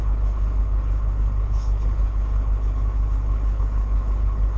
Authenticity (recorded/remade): remade